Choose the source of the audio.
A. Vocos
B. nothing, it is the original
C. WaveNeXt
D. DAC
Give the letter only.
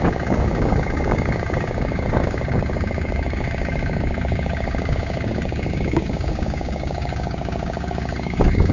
D